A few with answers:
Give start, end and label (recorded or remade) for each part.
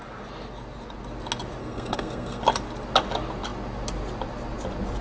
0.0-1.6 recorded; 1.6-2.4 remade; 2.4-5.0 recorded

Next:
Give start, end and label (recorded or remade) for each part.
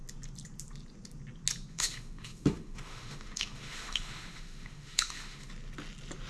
0.0-1.7 recorded; 1.7-5.5 remade; 5.5-6.3 recorded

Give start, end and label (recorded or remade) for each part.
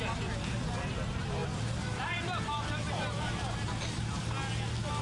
0.0-5.0 recorded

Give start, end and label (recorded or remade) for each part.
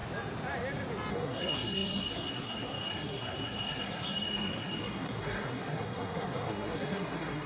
0.0-1.1 recorded; 1.1-7.5 remade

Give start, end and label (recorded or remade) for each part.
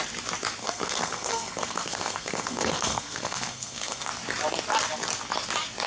0.0-0.6 recorded; 0.6-4.1 remade; 4.1-5.9 recorded